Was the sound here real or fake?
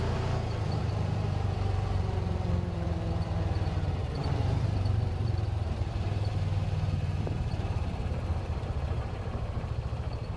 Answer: fake